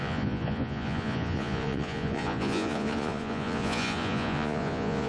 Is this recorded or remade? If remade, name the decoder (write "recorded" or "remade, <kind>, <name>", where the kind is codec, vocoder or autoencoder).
remade, vocoder, Vocos